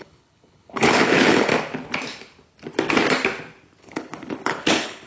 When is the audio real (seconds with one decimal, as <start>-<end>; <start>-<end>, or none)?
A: 1.5-3.8

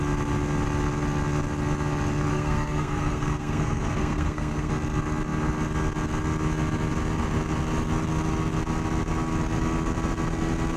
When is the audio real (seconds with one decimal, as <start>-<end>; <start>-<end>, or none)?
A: 0.0-2.3; 4.7-10.8

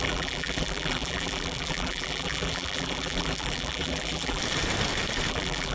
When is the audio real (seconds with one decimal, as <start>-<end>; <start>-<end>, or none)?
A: 4.4-5.3

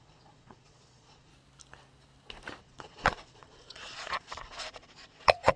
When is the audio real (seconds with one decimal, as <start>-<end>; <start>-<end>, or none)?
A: 1.3-2.6

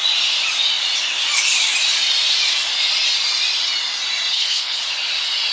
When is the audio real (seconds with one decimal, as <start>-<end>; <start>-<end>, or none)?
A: 0.0-4.3; 4.8-5.5

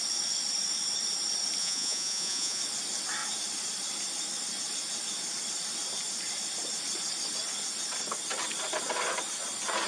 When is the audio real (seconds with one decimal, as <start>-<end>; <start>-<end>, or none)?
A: 0.0-1.6; 2.6-9.9

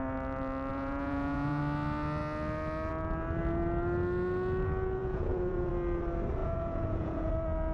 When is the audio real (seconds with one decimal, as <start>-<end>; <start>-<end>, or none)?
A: 0.0-0.7; 1.6-5.0; 5.7-6.4; 7.3-7.7

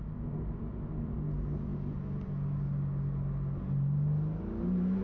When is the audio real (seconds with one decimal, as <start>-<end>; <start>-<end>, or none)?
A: 0.0-5.0